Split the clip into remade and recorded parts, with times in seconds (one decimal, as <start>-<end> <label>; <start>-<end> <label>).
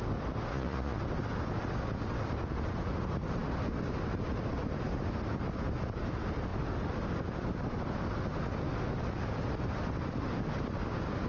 0.0-0.5 recorded; 0.5-1.0 remade; 1.0-11.3 recorded